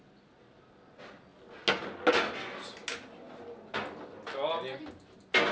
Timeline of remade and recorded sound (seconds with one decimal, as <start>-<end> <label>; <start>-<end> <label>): 0.0-5.5 recorded